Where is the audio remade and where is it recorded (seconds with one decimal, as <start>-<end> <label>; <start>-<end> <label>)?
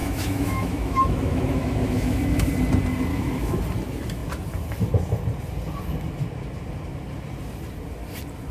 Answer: 0.0-2.5 remade; 2.5-3.1 recorded; 3.1-3.6 remade; 3.6-8.5 recorded